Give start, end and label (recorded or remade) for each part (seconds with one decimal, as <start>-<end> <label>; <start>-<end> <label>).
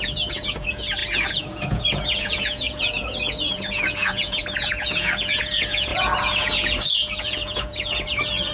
0.0-8.5 remade